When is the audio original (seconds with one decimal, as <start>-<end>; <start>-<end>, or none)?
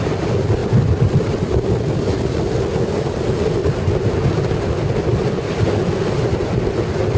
0.0-7.2